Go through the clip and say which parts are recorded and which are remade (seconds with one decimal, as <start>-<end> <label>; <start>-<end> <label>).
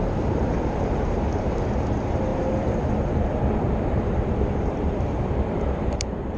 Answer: 0.0-6.4 remade